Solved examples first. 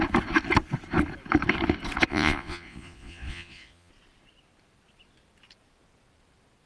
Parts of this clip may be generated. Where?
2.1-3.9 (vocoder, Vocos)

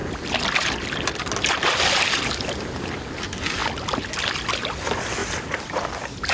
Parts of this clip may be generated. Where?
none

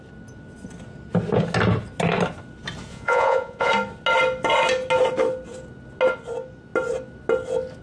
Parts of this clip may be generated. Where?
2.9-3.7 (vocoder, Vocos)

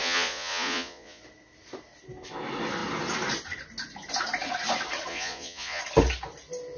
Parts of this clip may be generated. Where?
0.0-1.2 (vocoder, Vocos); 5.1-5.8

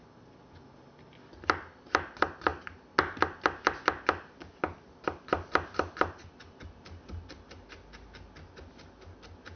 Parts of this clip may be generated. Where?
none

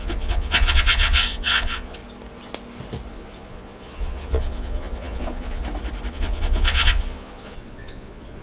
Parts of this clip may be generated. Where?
0.0-2.0 (vocoder, Vocos); 3.1-5.6; 6.1-8.4